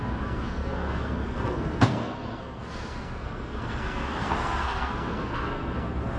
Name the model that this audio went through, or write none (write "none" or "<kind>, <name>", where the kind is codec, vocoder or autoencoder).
codec, SNAC